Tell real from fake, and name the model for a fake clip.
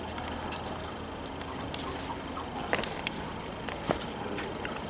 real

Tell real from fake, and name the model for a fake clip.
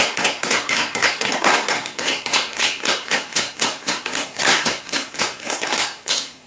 fake, codec, SNAC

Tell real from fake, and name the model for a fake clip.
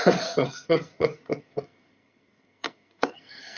fake, codec, SNAC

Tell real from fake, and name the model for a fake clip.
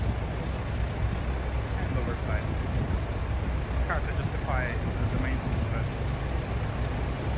real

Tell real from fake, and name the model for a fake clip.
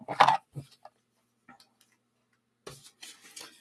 real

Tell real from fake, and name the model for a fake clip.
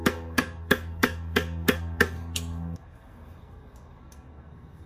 fake, codec, SNAC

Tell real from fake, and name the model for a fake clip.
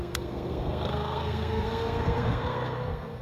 fake, codec, SNAC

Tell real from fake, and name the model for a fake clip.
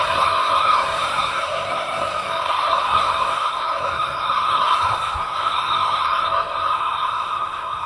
fake, codec, SNAC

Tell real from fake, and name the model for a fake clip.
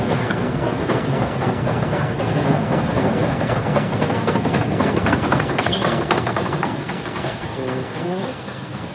fake, codec, SNAC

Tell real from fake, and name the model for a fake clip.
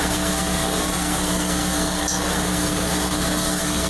fake, codec, SNAC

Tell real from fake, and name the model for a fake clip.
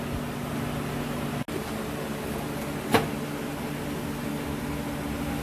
real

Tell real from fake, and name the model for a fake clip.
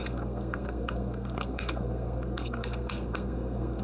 fake, codec, SNAC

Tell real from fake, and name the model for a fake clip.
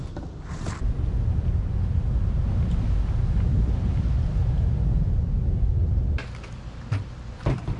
real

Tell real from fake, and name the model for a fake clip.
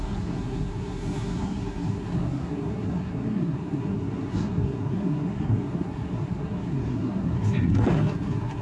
fake, codec, SNAC